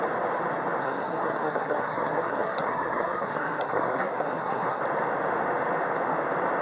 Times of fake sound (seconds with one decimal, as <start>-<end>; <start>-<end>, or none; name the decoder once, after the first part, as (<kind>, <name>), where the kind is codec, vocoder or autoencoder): 0.8-4.8 (codec, SNAC)